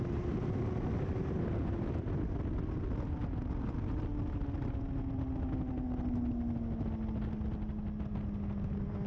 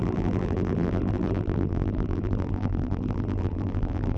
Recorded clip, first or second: first